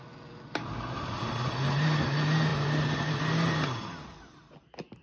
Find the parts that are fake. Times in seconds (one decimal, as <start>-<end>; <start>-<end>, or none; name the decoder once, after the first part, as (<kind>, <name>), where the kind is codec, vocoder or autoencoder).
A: none